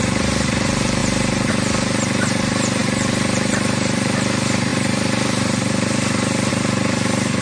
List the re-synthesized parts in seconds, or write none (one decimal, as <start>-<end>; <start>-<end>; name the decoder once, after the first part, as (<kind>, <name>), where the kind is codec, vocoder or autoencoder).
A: 0.0-7.4 (vocoder, BigVGAN v2)